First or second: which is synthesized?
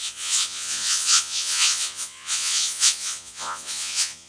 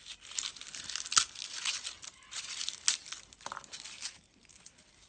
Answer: first